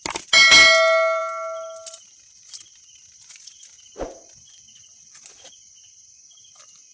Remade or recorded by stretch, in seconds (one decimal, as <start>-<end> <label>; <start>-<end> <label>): 0.0-6.9 recorded